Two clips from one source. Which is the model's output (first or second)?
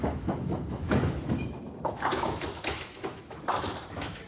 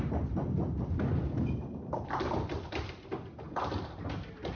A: first